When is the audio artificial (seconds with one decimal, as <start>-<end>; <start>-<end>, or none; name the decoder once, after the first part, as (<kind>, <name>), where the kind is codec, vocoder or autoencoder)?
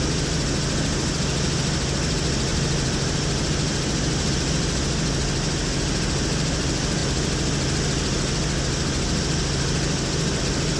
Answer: 2.5-4.3 (vocoder, BigVGAN v2)